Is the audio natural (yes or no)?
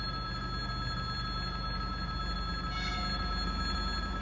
yes